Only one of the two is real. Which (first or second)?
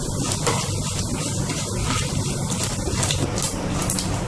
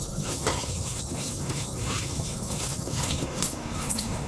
first